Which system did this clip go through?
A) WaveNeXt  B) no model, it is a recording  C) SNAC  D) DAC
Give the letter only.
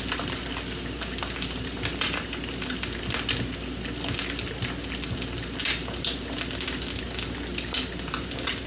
B